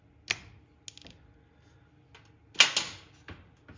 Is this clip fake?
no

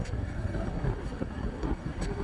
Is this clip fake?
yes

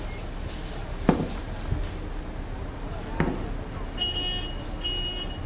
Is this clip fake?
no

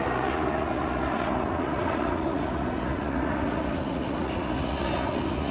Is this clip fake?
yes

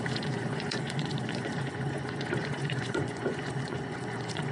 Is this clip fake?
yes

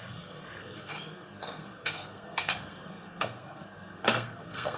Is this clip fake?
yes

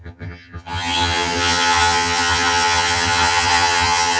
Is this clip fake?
yes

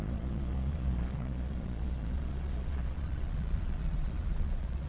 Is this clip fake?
yes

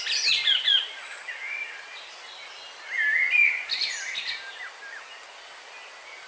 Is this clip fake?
no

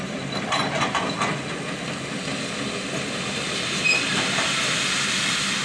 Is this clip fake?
no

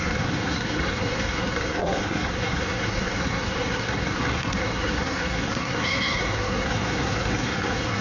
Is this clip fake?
yes